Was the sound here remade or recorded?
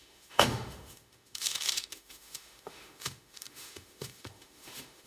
remade